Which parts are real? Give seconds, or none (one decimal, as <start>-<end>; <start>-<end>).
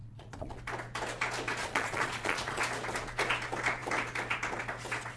0.6-1.6; 2.6-5.2